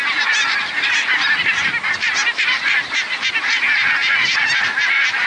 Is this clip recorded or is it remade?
recorded